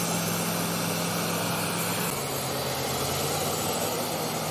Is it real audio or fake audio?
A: real